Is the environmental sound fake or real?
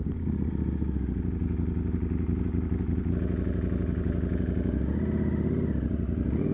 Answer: real